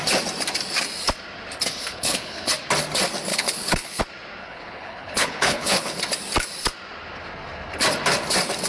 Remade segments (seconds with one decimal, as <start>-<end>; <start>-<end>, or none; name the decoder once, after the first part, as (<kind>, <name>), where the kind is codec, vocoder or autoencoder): 1.8-2.5 (codec, HILCodec); 3.3-4.0; 4.4-6.0